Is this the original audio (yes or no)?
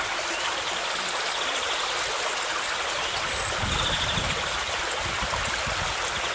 yes